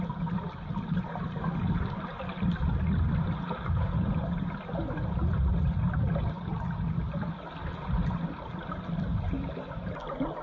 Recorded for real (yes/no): yes